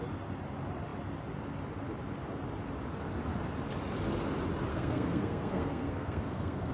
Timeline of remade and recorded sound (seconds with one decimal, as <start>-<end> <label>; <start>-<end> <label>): 0.0-4.7 recorded; 4.7-6.7 remade